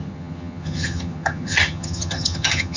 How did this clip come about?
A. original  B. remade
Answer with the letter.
B